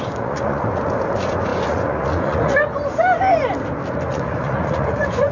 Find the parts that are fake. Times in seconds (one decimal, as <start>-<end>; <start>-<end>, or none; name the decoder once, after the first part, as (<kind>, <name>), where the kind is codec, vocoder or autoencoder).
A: 0.0-2.6 (vocoder, Vocos); 4.1-5.3